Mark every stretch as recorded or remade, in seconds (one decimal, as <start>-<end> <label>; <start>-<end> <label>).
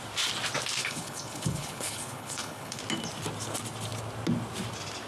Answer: 0.0-0.8 recorded; 0.8-2.8 remade; 2.8-5.1 recorded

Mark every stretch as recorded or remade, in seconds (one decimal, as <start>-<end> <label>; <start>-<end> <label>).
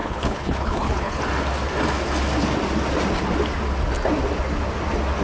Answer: 0.0-1.2 remade; 1.2-5.2 recorded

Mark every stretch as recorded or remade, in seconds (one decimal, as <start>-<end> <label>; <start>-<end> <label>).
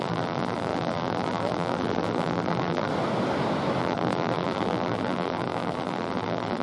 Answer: 0.0-2.9 remade; 2.9-3.8 recorded; 3.8-6.6 remade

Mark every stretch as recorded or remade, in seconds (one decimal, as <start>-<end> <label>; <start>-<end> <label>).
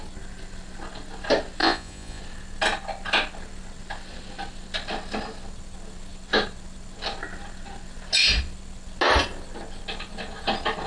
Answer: 0.0-1.6 recorded; 1.6-2.2 remade; 2.2-10.9 recorded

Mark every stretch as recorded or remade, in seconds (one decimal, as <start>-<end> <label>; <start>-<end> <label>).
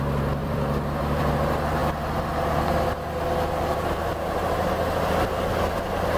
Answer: 0.0-0.4 recorded; 0.4-1.3 remade; 1.3-6.2 recorded